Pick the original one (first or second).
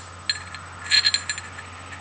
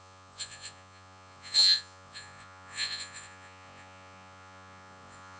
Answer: first